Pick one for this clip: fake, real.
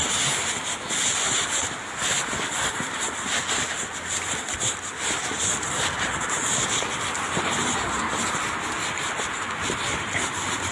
real